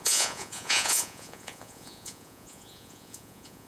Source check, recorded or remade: remade